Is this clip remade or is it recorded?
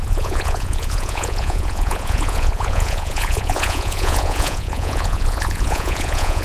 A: remade